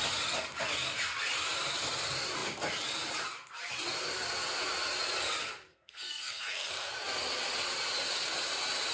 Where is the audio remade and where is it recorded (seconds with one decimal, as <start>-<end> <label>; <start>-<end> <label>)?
0.0-5.7 recorded; 5.7-6.9 remade; 6.9-8.9 recorded